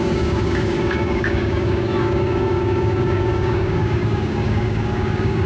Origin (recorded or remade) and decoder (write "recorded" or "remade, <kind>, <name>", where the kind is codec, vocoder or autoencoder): remade, codec, DAC